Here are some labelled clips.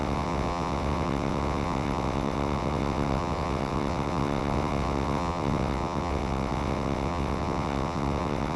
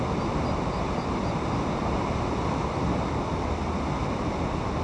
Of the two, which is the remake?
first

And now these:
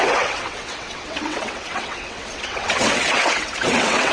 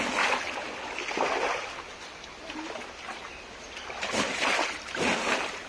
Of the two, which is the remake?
first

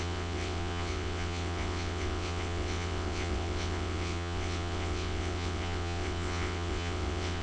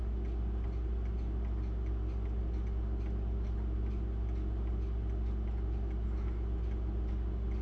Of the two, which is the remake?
first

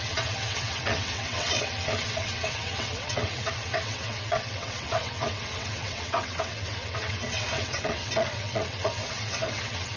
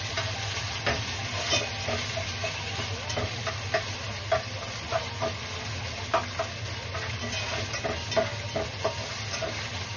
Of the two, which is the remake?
first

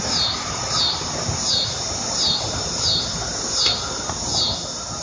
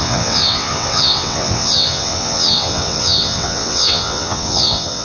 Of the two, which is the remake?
second